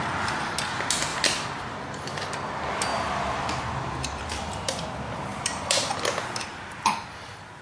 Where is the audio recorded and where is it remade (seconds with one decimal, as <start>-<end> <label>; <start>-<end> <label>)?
0.0-1.1 recorded; 1.1-1.8 remade; 1.8-5.3 recorded; 5.3-5.9 remade; 5.9-7.6 recorded